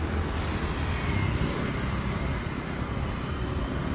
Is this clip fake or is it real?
real